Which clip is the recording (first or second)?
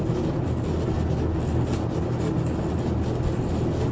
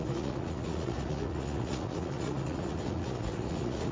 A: first